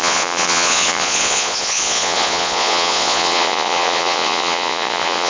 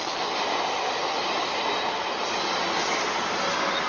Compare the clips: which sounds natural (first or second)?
second